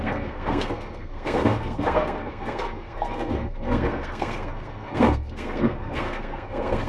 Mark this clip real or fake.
fake